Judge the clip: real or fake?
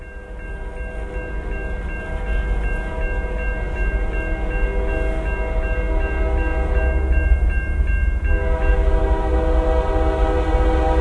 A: real